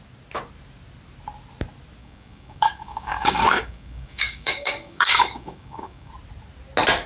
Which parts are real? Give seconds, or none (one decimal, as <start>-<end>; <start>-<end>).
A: 0.0-2.0; 6.1-7.1